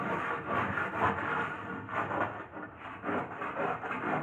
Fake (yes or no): yes